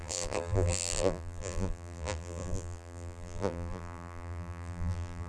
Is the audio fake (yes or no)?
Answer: yes